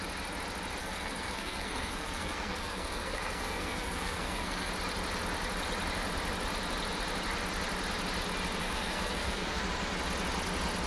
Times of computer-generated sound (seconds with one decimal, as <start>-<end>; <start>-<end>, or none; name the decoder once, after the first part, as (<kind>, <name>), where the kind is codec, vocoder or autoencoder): 0.8-4.7 (codec, SNAC); 8.6-9.6